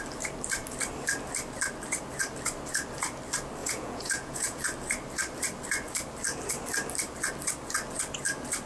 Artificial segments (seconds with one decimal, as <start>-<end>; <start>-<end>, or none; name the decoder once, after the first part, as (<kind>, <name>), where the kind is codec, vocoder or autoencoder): 3.6-4.6 (vocoder, Vocos)